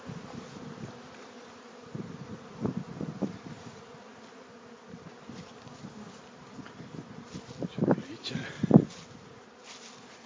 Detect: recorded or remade recorded